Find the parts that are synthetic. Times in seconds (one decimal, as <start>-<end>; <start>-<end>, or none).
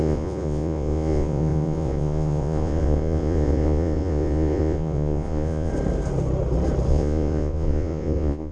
0.0-5.7; 6.9-8.5